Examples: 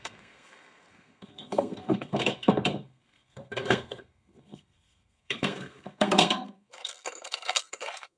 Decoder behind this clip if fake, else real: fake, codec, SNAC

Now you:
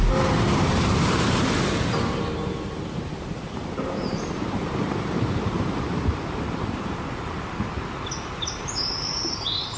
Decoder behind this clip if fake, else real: fake, vocoder, BigVGAN v2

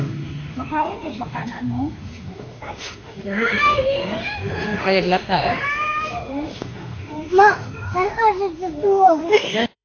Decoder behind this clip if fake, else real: fake, autoencoder, DAC-VAE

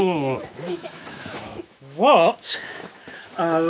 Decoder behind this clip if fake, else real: fake, autoencoder, DAC-VAE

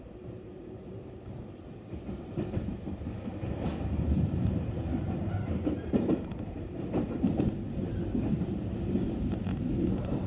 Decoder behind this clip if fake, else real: fake, vocoder, BigVGAN v2